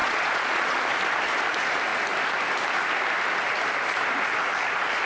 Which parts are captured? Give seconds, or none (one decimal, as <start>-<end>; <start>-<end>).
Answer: 0.8-5.1